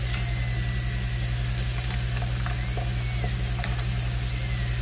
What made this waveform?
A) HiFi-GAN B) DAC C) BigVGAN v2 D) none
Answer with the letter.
D